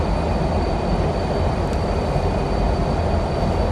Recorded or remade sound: recorded